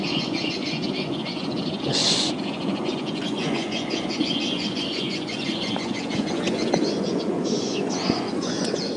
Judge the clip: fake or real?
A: fake